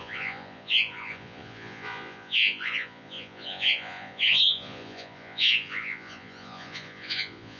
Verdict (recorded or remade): remade